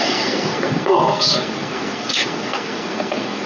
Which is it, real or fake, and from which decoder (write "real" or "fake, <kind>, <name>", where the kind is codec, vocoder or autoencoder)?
fake, codec, SNAC